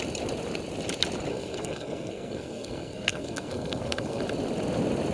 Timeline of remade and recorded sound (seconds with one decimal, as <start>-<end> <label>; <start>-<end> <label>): 0.0-1.3 recorded; 1.3-4.2 remade; 4.2-5.1 recorded

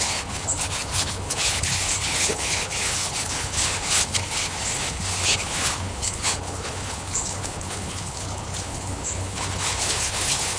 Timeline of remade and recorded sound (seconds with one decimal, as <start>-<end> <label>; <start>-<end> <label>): 0.0-10.6 remade